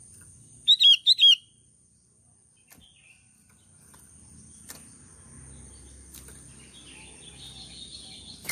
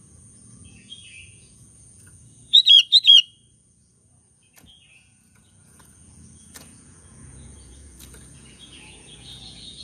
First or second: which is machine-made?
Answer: second